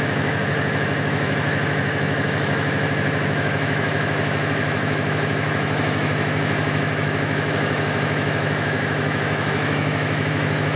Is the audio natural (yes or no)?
no